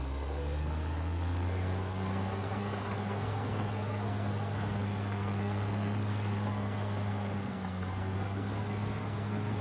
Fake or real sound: fake